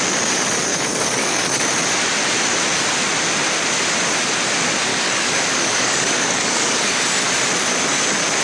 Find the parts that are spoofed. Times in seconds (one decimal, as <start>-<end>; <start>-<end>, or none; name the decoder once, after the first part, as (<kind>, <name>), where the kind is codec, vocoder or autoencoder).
0.7-1.7 (codec, DAC); 4.9-7.0